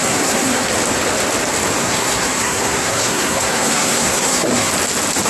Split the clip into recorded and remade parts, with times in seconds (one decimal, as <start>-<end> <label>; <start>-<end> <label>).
0.0-0.7 remade; 0.7-1.8 recorded; 1.8-4.7 remade; 4.7-5.3 recorded

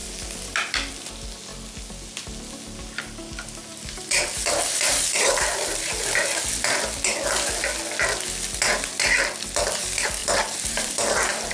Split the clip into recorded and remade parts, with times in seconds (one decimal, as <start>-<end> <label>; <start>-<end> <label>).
0.0-1.1 remade; 1.1-3.7 recorded; 3.7-5.9 remade; 5.9-10.2 recorded; 10.2-11.5 remade

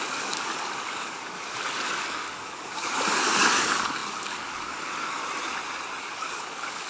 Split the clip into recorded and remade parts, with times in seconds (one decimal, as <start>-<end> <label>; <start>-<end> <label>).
0.0-5.2 remade; 5.2-6.0 recorded; 6.0-6.9 remade